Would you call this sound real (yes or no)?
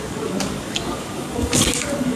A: no